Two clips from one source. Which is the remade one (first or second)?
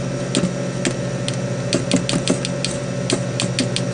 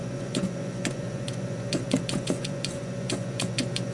second